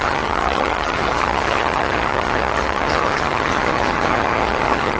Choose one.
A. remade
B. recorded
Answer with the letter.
A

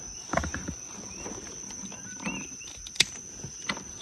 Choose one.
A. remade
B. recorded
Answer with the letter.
B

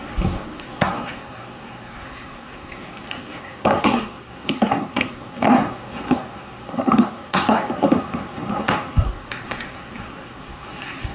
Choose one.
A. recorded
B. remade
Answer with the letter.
B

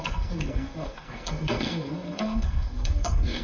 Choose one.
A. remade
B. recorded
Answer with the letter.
A